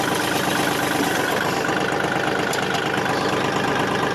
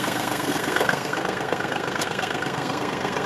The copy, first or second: second